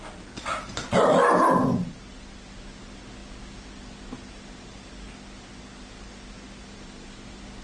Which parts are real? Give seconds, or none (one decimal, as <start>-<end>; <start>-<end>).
0.0-7.6